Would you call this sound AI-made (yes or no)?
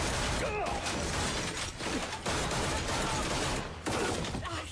no